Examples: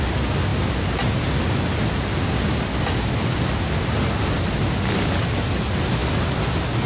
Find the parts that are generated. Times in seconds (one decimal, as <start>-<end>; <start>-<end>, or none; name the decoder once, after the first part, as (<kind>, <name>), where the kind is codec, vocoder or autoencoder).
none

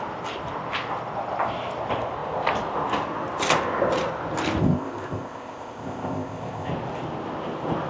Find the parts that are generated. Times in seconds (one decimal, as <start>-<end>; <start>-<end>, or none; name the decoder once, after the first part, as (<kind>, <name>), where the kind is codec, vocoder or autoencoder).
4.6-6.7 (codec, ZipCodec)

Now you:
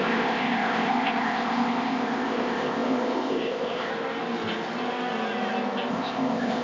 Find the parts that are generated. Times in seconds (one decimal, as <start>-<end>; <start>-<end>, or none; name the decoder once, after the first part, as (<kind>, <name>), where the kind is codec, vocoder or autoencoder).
0.0-3.9 (codec, ZipCodec); 5.9-6.6

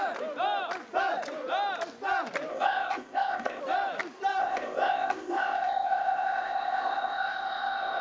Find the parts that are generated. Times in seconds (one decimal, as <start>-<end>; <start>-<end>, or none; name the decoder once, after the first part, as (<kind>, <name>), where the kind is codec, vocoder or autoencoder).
2.5-3.6 (codec, ZipCodec); 4.4-8.0